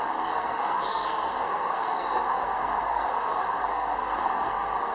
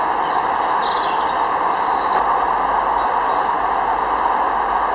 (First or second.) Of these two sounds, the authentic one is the second